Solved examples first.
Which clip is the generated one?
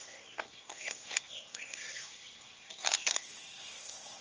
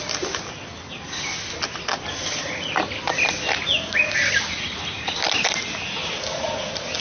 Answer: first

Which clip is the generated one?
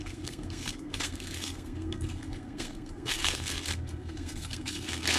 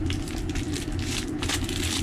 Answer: first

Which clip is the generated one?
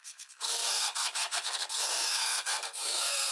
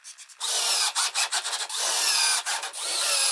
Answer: first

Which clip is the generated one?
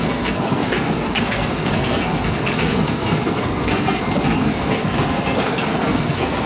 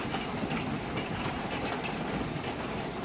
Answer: first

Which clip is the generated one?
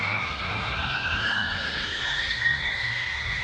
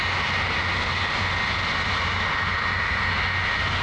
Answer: first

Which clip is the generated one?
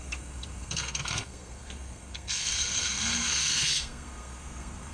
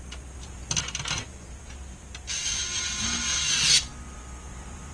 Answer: first